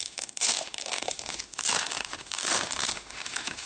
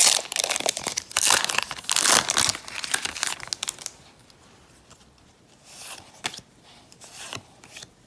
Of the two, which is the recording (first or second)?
second